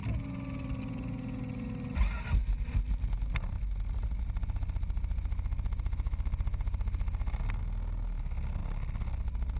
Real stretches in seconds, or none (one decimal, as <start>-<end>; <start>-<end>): 0.0-9.6

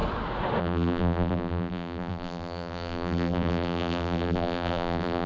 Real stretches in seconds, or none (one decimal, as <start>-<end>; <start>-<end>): 0.0-0.6